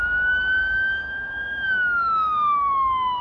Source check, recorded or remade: remade